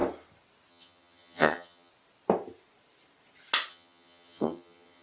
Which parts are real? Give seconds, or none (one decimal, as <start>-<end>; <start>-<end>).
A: 0.0-0.7; 1.9-3.7